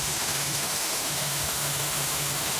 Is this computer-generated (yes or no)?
yes